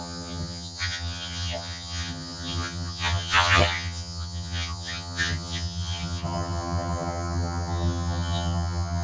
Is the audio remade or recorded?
remade